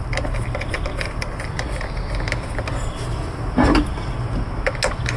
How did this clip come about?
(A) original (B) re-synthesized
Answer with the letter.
A